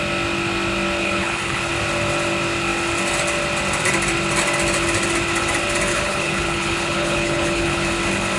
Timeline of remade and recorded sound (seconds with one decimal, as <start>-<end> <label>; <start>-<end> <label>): 0.0-1.0 recorded; 1.0-1.7 remade; 1.7-5.9 recorded; 5.9-7.9 remade; 7.9-8.4 recorded

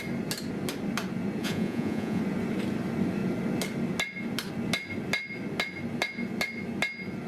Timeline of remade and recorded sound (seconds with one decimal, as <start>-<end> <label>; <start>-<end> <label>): 0.0-1.4 recorded; 1.4-2.2 remade; 2.2-7.3 recorded